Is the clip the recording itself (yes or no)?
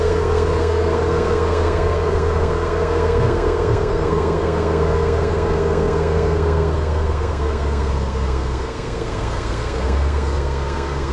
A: no